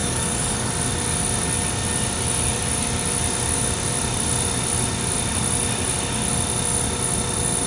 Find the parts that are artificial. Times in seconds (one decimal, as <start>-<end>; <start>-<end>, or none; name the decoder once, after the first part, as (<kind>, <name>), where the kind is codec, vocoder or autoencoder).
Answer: 0.0-0.7 (codec, DAC)